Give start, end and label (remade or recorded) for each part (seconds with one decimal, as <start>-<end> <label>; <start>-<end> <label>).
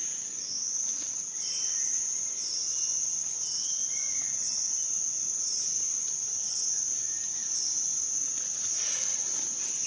0.0-9.9 recorded